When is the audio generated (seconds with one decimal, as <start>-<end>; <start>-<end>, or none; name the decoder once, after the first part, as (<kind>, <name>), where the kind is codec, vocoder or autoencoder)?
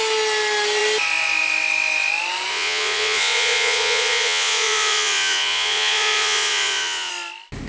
2.5-7.1 (vocoder, Vocos)